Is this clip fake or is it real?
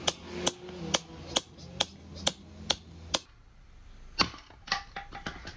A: real